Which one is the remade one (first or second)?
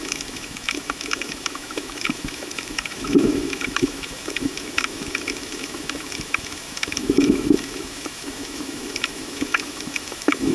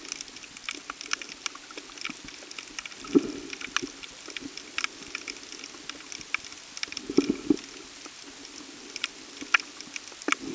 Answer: first